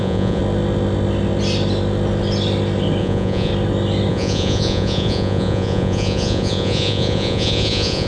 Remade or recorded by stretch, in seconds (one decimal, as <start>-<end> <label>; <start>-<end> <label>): 0.0-0.4 remade; 0.4-3.0 recorded; 3.0-3.5 remade; 3.5-4.1 recorded; 4.1-8.1 remade